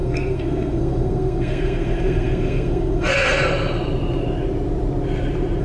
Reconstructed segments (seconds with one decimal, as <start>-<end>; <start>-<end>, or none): 0.0-3.4

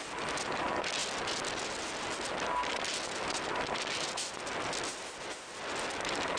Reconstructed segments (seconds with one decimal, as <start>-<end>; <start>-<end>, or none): none